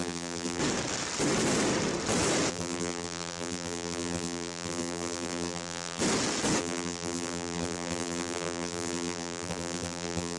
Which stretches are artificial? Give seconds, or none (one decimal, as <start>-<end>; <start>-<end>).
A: 0.0-0.6; 2.5-6.0; 6.6-10.4